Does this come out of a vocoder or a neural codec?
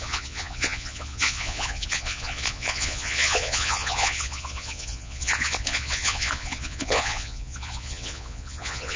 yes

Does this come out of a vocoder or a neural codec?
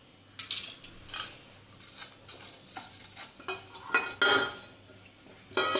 no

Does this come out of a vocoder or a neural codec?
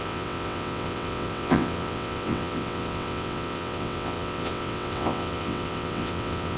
yes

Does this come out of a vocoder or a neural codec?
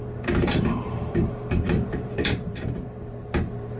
yes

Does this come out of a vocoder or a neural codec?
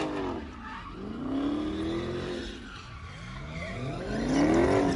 no